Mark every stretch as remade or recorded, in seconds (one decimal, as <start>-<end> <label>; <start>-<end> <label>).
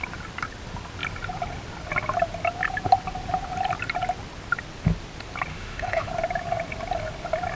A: 0.0-5.5 recorded; 5.5-6.1 remade; 6.1-7.5 recorded